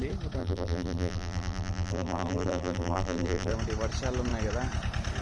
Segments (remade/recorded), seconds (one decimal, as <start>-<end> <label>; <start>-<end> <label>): 0.0-0.4 recorded; 0.4-3.5 remade; 3.5-5.2 recorded

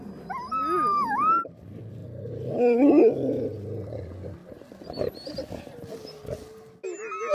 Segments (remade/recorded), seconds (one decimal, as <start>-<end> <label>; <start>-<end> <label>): 0.0-7.3 recorded

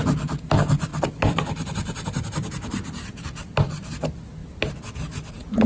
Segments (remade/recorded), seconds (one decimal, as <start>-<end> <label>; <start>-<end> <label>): 0.0-0.9 recorded; 0.9-3.9 remade; 3.9-5.7 recorded

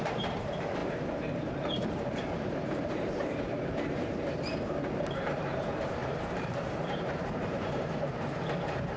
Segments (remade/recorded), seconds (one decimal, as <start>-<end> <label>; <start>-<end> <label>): 0.0-9.0 remade